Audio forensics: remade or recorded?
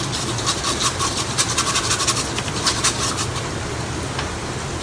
recorded